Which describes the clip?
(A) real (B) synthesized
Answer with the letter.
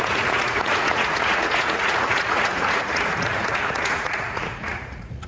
B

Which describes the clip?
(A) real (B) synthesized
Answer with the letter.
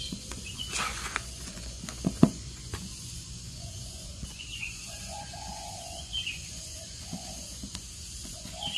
B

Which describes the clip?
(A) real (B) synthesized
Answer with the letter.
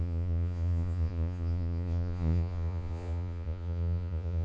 B